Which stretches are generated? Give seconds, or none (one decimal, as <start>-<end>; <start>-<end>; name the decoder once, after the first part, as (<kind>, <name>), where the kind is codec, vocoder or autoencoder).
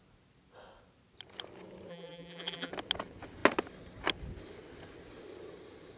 1.9-2.7 (vocoder, BigVGAN v2)